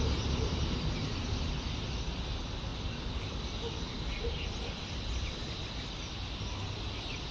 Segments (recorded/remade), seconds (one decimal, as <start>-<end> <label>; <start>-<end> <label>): 0.0-7.3 recorded